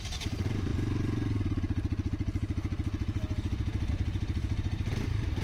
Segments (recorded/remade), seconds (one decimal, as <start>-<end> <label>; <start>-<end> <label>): 0.0-0.7 remade; 0.7-3.9 recorded; 3.9-5.4 remade

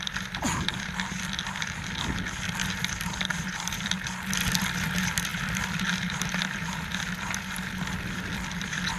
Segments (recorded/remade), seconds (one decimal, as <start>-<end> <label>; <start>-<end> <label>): 0.0-3.3 recorded; 3.3-3.9 remade; 3.9-5.3 recorded; 5.3-6.4 remade; 6.4-9.0 recorded

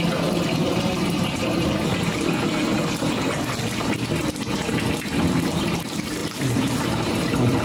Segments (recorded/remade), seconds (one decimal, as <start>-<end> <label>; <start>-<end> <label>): 0.0-0.6 recorded; 0.6-2.8 remade; 2.8-6.2 recorded; 6.2-7.6 remade

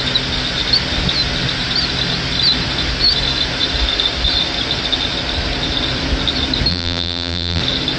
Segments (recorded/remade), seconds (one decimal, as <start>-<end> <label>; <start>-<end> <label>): 0.0-6.7 recorded; 6.7-7.6 remade; 7.6-8.0 recorded